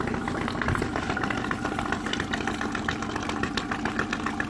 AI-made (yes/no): no